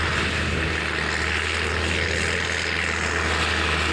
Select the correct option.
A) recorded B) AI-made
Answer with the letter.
A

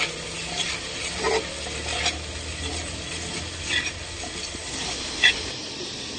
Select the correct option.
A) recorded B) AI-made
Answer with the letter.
A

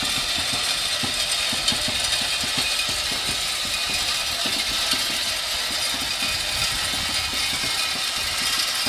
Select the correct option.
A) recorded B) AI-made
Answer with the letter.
A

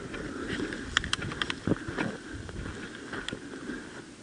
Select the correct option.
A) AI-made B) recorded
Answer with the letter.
B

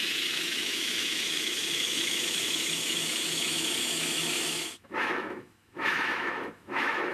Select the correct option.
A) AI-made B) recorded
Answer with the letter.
A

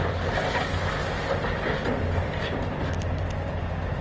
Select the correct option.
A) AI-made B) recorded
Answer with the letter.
A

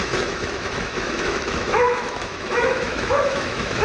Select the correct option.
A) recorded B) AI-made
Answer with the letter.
B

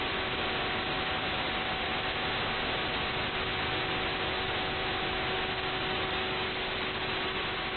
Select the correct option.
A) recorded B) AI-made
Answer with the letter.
A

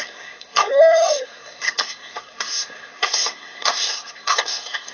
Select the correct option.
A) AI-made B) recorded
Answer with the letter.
A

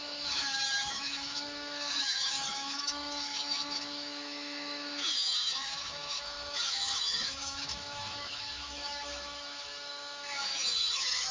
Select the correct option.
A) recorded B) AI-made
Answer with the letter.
B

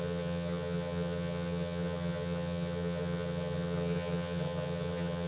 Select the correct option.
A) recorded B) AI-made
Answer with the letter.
B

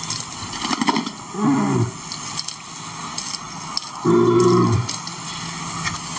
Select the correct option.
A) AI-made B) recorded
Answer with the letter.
B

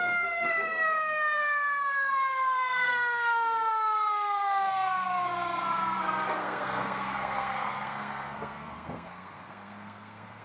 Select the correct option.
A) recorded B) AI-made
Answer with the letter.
B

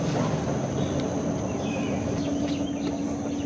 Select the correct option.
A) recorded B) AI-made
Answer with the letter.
A